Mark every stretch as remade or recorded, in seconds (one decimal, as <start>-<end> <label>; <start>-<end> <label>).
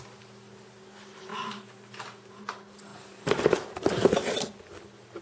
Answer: 0.0-2.9 recorded; 2.9-4.4 remade; 4.4-5.2 recorded